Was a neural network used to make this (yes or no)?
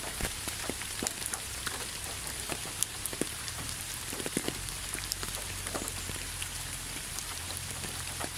yes